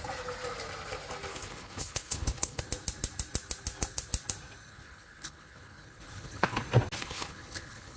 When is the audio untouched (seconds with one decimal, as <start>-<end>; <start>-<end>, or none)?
0.0-1.3; 2.6-4.7; 6.6-7.0